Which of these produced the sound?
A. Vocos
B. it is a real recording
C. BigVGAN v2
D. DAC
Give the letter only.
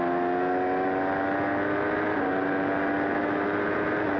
B